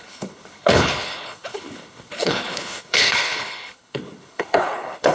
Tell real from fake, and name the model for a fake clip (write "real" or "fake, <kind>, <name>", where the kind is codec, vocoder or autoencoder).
fake, codec, HILCodec